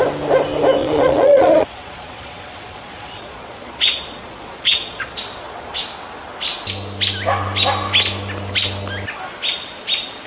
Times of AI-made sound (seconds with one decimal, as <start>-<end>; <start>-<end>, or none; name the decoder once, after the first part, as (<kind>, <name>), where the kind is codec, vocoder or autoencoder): 0.8-5.8 (vocoder, Vocos)